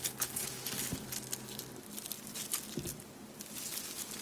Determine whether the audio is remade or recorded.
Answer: recorded